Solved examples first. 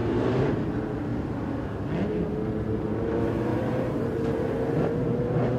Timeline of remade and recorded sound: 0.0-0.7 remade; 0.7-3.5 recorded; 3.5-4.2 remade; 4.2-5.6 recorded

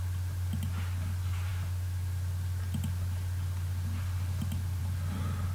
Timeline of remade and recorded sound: 0.0-5.5 recorded

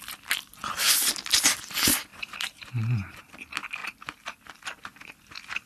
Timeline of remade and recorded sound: 0.0-2.1 recorded; 2.1-3.3 remade; 3.3-5.7 recorded

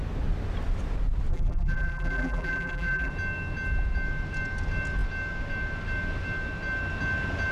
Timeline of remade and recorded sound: 0.0-1.3 recorded; 1.3-3.1 remade; 3.1-7.5 recorded

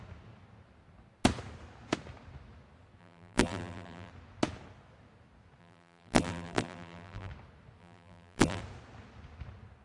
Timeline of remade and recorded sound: 0.0-3.0 recorded; 3.0-4.1 remade; 4.1-5.6 recorded; 5.6-7.3 remade; 7.3-7.8 recorded; 7.8-8.6 remade; 8.6-9.8 recorded